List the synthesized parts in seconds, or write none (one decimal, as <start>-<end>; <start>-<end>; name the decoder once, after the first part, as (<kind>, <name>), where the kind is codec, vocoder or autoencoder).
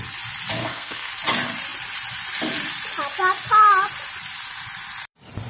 0.6-1.1 (codec, SNAC)